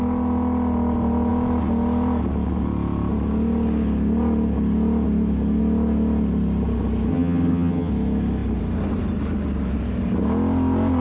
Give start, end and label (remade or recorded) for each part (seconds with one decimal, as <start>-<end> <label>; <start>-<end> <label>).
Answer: 0.0-7.1 recorded; 7.1-7.9 remade; 7.9-11.0 recorded